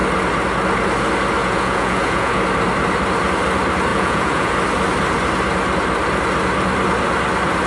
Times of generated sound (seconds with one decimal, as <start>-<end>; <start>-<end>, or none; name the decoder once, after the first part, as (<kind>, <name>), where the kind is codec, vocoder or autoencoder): 1.4-2.4 (vocoder, Vocos); 3.9-4.5